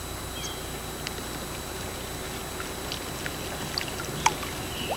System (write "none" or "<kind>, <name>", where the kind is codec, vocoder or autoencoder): none